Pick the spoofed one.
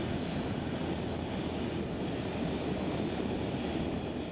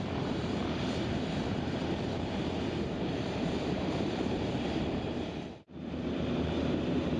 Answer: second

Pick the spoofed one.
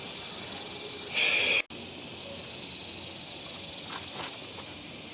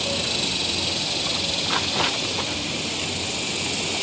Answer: second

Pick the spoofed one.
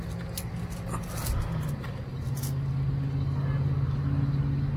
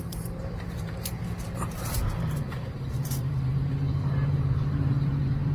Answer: second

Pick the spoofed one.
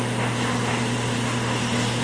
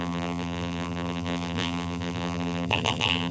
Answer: second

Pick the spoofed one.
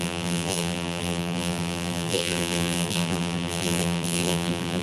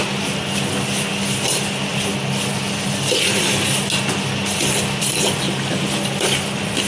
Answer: first